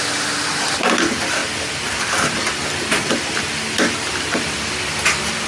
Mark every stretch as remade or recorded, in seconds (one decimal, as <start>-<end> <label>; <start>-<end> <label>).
0.0-5.5 recorded